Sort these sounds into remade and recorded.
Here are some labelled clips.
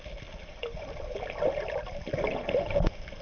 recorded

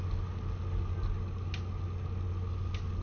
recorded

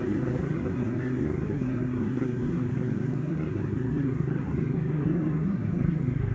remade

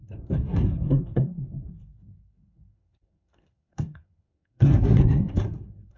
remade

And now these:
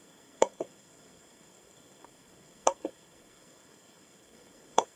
remade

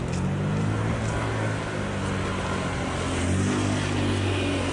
recorded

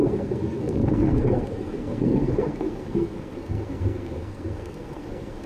remade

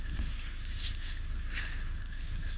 remade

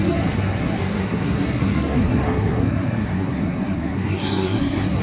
remade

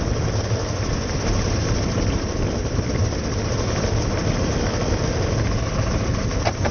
recorded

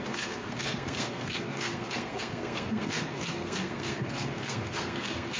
remade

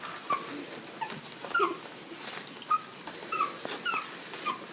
recorded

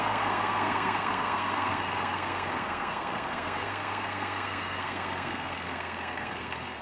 remade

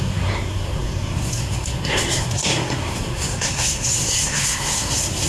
remade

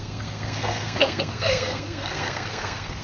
remade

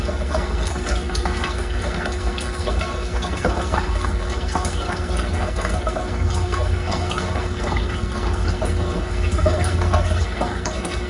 remade